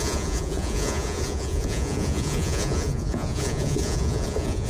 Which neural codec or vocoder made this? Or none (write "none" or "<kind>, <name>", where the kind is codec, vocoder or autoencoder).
vocoder, Vocos